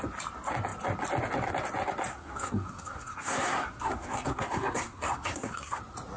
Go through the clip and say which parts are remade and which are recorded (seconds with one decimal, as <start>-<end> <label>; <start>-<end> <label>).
0.0-2.1 recorded; 2.1-5.8 remade; 5.8-6.2 recorded